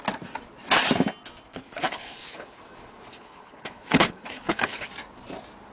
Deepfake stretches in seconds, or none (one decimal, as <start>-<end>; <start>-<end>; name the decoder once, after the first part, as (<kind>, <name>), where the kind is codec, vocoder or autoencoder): 1.5-2.6 (codec, HILCodec); 3.1-4.9